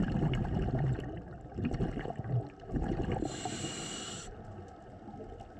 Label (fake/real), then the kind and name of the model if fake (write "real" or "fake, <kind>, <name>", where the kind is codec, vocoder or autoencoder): real